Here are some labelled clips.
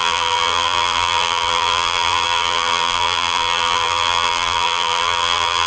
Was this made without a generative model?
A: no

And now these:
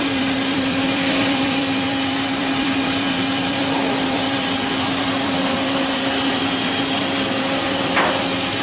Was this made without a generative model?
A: no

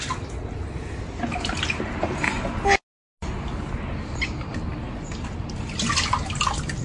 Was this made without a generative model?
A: yes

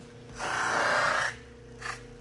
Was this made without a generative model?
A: yes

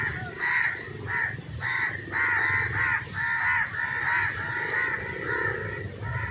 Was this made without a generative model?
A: yes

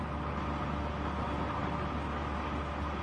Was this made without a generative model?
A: yes